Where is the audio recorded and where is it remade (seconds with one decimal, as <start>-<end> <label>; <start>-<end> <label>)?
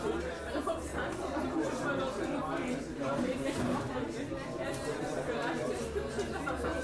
0.0-6.8 recorded